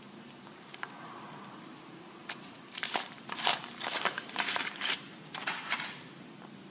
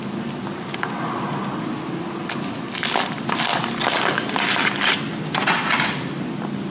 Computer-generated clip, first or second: first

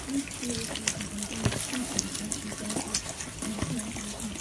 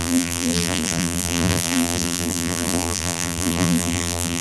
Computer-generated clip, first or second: second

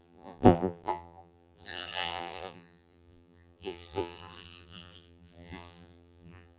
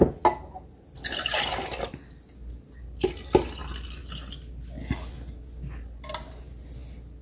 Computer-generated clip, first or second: first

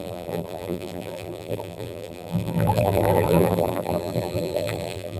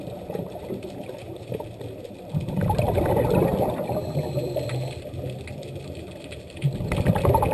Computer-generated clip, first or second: first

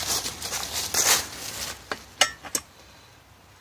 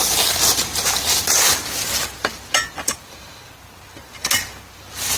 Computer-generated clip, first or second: second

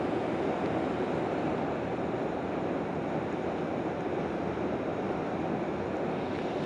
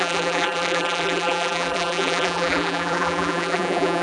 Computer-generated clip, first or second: second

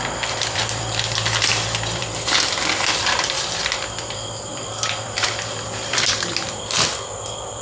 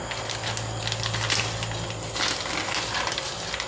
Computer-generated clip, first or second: first